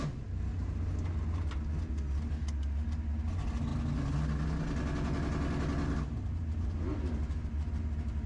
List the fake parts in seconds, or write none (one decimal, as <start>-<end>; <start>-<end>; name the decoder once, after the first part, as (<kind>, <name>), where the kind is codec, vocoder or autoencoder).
none